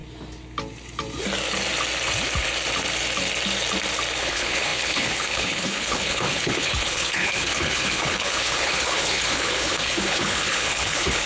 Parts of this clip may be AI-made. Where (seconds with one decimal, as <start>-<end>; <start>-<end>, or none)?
4.2-11.3